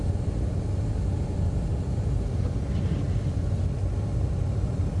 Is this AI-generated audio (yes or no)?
no